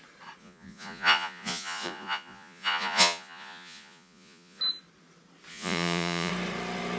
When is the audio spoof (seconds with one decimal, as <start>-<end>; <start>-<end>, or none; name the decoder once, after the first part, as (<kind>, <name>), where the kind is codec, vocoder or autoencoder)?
0.4-4.6 (vocoder, Vocos); 5.5-6.3